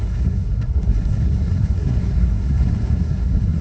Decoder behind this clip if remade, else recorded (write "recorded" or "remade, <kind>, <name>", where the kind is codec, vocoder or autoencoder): remade, codec, SNAC